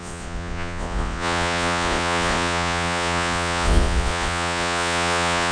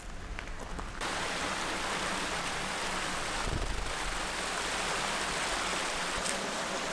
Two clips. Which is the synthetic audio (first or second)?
first